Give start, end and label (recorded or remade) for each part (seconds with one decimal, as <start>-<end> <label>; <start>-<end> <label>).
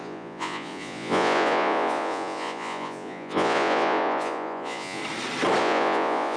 0.0-5.0 remade; 5.0-5.6 recorded; 5.6-6.4 remade